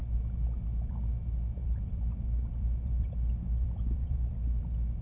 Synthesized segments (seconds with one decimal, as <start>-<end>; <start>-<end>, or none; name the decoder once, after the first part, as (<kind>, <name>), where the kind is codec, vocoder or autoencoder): 1.6-4.6 (vocoder, BigVGAN v2)